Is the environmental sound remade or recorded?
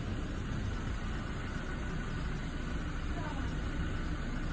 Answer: recorded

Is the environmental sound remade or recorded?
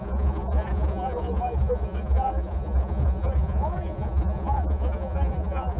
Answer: remade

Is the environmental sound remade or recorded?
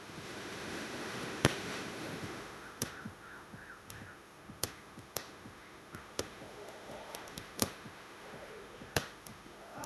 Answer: remade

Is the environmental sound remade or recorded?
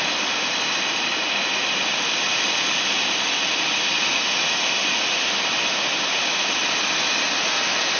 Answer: recorded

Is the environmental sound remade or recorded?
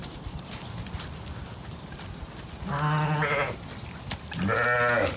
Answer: recorded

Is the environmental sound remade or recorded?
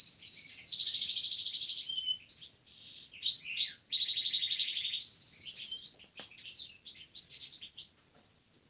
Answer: recorded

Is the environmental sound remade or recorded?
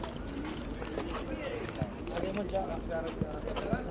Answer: recorded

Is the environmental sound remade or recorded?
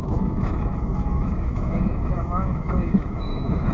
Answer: remade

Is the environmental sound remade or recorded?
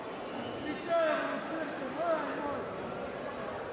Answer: recorded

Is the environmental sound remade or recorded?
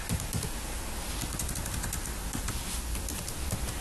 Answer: recorded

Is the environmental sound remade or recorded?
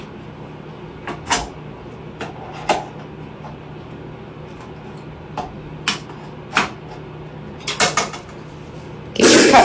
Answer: recorded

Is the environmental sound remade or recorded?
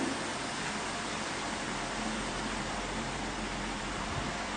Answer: remade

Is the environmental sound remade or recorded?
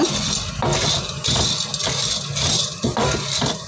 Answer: recorded